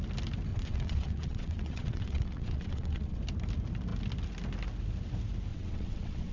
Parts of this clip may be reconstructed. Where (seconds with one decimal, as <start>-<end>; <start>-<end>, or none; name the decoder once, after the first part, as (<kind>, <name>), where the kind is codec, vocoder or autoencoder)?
0.5-3.2 (vocoder, WaveNeXt); 5.5-6.3

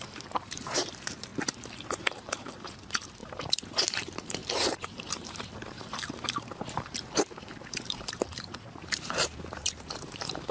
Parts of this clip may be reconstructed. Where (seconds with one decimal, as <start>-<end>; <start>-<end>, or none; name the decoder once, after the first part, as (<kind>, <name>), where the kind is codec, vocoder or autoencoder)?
0.0-1.3 (vocoder, BigVGAN v2); 1.9-10.5

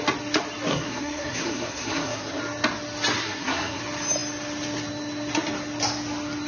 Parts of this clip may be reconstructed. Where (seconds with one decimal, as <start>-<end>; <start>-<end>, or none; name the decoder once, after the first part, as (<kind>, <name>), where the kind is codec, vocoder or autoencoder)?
0.7-2.4 (codec, SNAC); 3.2-3.8

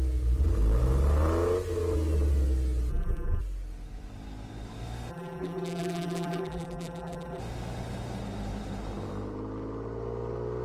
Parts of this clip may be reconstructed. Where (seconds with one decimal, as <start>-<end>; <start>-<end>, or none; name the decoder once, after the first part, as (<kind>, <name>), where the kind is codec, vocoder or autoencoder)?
2.9-3.4 (vocoder, BigVGAN v2); 5.1-7.4